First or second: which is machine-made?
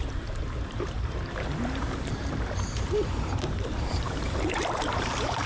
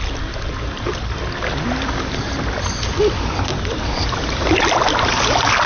first